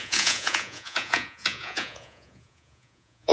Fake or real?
fake